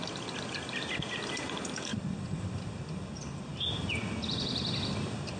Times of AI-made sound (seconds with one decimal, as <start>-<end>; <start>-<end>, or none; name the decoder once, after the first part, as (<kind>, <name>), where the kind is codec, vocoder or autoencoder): 1.9-2.8 (vocoder, BigVGAN v2)